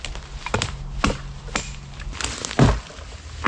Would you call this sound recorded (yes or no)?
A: yes